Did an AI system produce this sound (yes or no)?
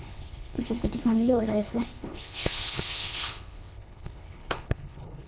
yes